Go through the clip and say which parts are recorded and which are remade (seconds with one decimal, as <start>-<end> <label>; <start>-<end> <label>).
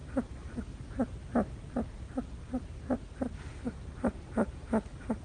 0.0-5.2 remade